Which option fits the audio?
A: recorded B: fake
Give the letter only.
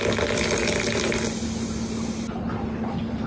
A